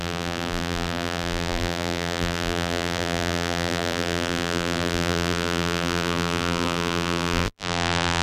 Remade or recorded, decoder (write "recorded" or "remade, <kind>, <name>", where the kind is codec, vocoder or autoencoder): remade, vocoder, BigVGAN v2